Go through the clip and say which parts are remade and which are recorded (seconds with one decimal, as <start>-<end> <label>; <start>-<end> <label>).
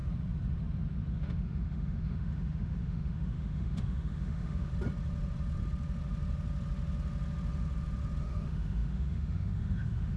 0.0-1.1 recorded; 1.1-4.7 remade; 4.7-8.2 recorded; 8.2-10.2 remade